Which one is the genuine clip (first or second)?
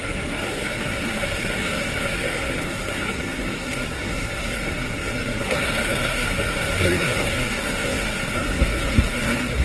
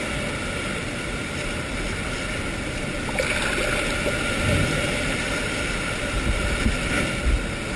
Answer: second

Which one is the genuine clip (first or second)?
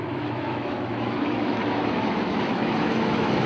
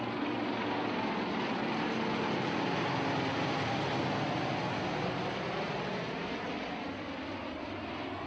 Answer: second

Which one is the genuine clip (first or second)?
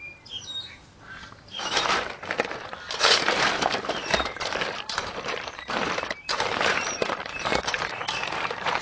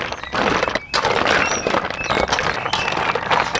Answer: second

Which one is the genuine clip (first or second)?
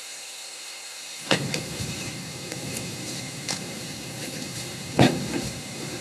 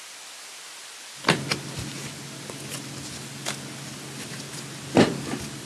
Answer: second